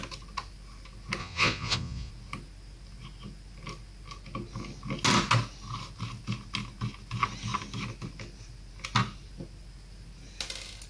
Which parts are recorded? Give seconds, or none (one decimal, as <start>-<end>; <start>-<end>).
0.0-1.2; 2.1-10.9